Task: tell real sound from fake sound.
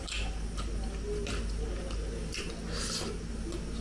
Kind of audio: real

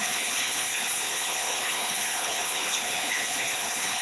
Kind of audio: fake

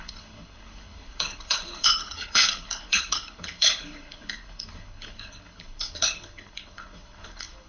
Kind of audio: fake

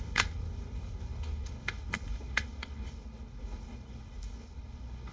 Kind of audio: fake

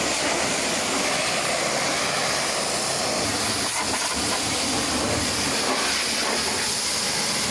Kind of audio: real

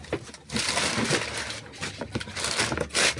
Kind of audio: real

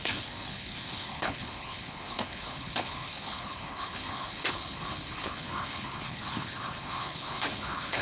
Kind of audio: fake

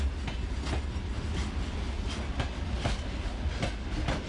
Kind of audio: real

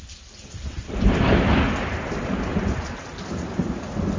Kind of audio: real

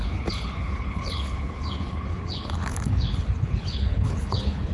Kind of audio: fake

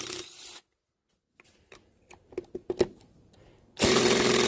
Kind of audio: real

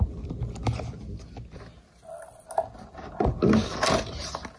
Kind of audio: real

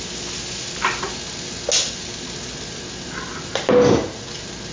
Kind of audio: real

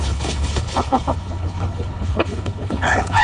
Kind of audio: fake